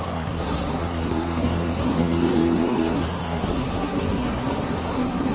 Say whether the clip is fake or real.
fake